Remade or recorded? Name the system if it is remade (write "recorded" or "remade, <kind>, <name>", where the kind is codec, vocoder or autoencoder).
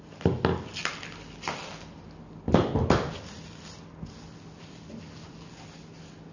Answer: recorded